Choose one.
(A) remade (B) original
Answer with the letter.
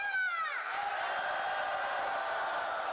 B